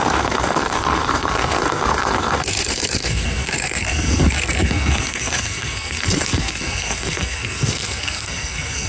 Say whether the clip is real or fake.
fake